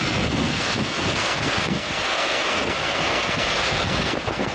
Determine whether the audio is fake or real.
fake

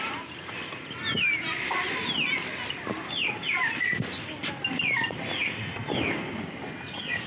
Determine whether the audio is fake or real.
real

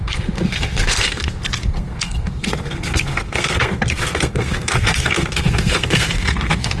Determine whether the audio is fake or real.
fake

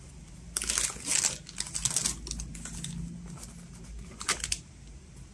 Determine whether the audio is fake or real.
real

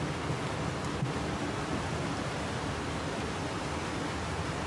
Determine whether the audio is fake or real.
real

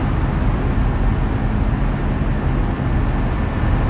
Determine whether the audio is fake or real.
real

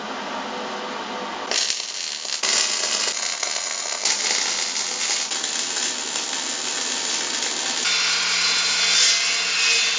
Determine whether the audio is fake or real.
real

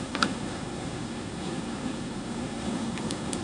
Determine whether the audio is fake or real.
fake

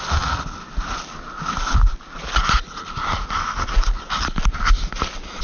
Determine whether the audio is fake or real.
real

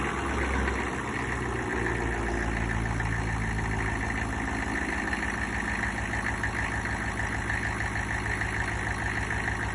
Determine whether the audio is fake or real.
real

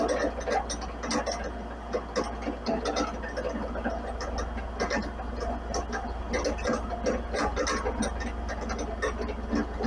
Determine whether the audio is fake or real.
real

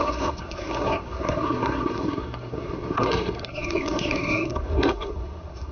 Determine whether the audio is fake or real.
fake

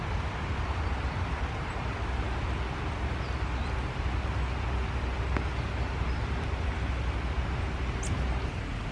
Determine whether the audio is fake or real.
real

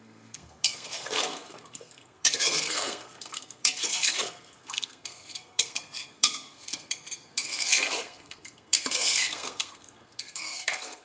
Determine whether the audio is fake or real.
fake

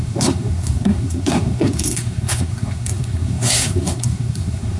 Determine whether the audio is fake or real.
fake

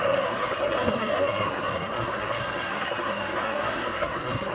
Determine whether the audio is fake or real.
fake